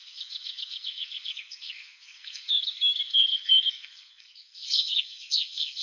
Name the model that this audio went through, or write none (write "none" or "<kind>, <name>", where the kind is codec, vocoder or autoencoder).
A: codec, SNAC